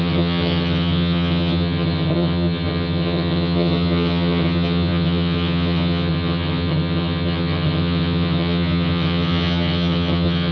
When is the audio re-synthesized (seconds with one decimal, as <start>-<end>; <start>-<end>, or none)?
0.0-10.5